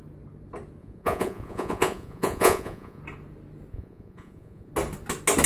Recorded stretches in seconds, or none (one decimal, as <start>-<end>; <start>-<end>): 0.0-0.8; 3.0-3.7; 4.7-5.5

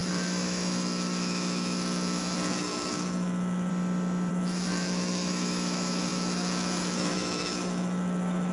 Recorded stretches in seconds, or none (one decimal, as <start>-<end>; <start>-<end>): 3.7-4.3

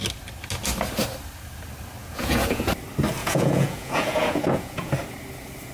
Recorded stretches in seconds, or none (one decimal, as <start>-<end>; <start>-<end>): 0.0-2.0; 2.7-3.2; 4.9-5.7

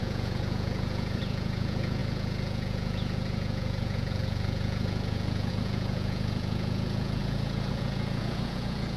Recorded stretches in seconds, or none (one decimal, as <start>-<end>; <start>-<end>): none

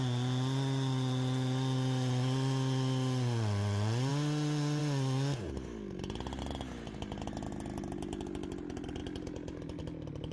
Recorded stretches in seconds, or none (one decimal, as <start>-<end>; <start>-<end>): 0.0-10.3

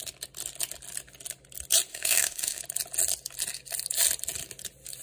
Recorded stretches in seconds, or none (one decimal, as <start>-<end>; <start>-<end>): 0.0-1.9; 2.6-5.0

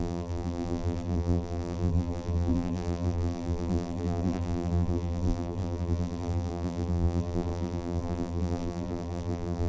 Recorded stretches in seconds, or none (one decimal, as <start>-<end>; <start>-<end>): none

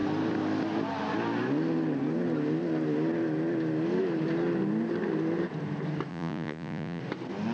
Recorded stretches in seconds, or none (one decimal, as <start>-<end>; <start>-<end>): 0.0-6.1; 7.0-7.5